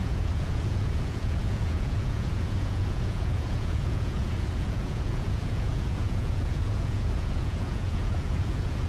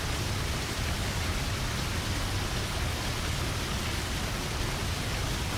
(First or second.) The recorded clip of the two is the second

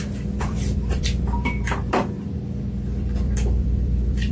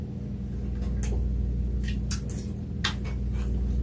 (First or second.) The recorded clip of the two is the second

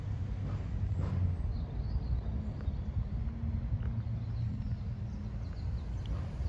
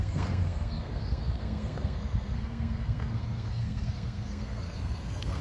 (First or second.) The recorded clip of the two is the first